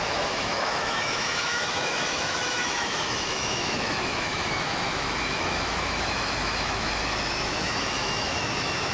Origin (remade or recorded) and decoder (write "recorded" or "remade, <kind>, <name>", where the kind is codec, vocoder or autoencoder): remade, autoencoder, DAC-VAE